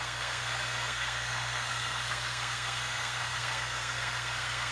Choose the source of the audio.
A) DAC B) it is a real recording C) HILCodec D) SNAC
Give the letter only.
D